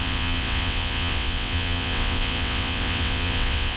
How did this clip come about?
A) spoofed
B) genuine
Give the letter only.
A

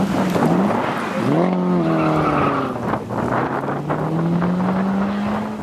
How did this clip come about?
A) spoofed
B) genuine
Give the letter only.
B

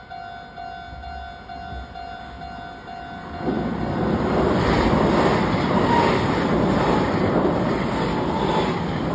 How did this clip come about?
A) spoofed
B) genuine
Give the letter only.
B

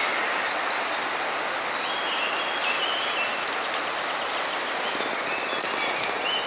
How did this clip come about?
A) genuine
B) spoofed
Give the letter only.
A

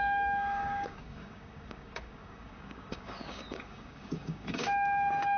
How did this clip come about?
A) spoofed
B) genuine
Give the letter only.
A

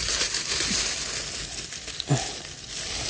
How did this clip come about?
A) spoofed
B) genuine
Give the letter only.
B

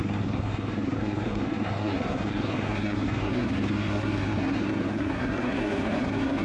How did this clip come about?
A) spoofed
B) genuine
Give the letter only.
A